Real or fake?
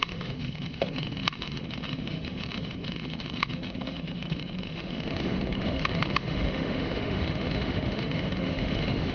fake